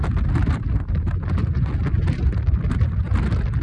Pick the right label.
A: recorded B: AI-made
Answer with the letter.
A